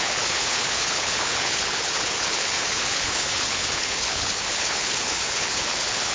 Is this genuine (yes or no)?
no